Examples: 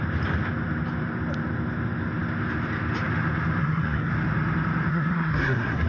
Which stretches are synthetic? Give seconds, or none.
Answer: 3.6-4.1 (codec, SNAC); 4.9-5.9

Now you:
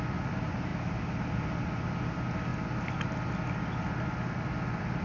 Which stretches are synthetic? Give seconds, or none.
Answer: none

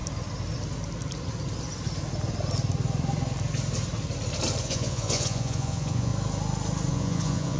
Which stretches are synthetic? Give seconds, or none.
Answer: 4.6-6.1 (vocoder, Vocos); 6.9-7.6

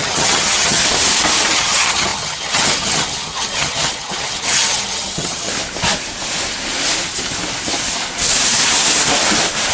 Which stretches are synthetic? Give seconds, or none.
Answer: 0.0-0.8 (vocoder, HiFi-GAN); 1.5-5.5

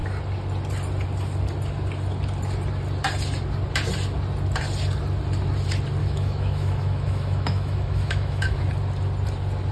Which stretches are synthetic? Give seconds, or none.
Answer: 6.0-8.6 (autoencoder, DAC-VAE)